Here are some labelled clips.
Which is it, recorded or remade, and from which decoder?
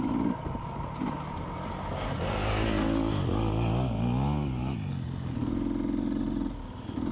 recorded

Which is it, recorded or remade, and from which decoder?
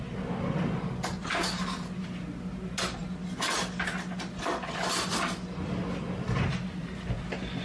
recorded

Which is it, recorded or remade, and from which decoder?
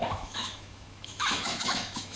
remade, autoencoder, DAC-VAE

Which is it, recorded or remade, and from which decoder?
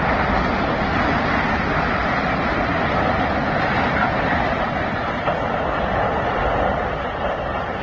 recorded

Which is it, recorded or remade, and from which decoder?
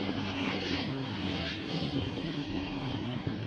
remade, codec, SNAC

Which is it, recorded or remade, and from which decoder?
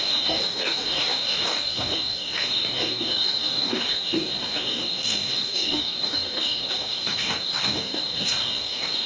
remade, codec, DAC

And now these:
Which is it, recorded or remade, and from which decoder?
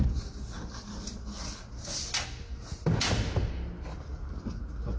recorded